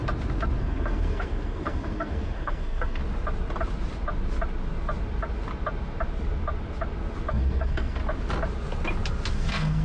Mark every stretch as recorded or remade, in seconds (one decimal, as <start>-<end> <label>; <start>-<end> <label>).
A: 0.0-0.6 recorded; 0.6-3.0 remade; 3.0-7.3 recorded; 7.3-8.0 remade; 8.0-9.3 recorded; 9.3-9.8 remade